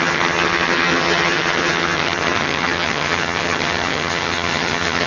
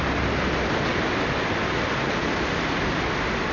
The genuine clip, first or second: second